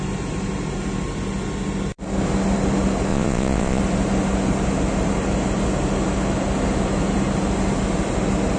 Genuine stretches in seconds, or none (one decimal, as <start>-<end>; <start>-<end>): 0.0-3.1; 3.8-8.6